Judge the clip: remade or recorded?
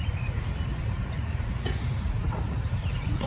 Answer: remade